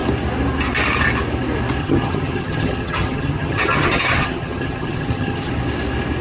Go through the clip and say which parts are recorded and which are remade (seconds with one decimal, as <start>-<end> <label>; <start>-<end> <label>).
0.0-1.8 recorded; 1.8-5.5 remade; 5.5-6.2 recorded